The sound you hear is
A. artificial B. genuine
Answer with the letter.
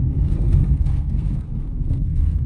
A